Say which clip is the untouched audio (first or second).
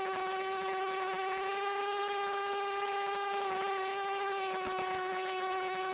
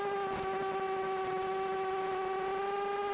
second